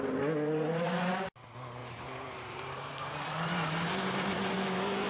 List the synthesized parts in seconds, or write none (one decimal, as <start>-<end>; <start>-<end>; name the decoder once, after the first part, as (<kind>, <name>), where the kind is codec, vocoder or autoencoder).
1.8-5.1 (vocoder, BigVGAN v2)